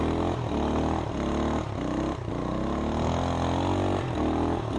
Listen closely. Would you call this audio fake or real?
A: real